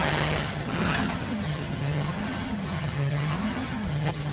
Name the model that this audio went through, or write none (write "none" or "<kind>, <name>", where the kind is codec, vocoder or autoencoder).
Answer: vocoder, HiFi-GAN